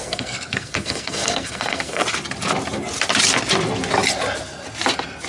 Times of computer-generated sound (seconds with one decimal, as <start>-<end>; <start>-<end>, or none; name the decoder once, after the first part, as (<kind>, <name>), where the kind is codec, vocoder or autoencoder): 0.0-2.0 (codec, SNAC)